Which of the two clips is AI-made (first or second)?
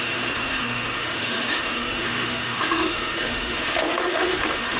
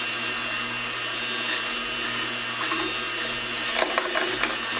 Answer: first